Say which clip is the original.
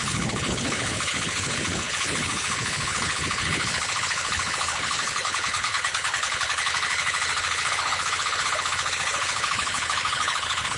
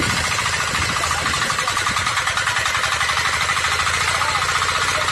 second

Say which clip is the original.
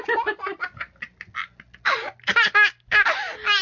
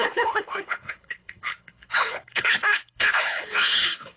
first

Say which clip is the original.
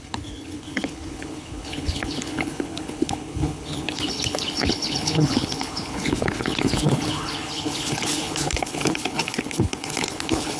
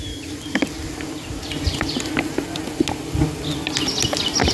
second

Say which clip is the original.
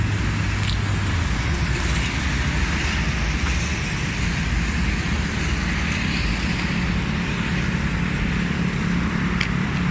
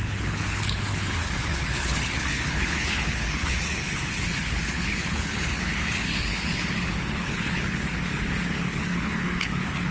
first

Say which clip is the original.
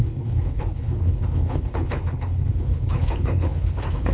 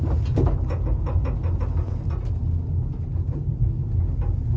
second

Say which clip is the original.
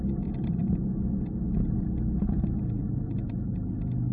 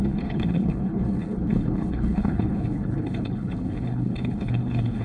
first